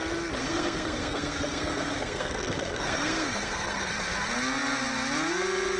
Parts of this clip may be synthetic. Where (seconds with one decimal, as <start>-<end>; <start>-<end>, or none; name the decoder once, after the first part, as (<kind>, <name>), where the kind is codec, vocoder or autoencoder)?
0.4-3.9 (codec, SNAC)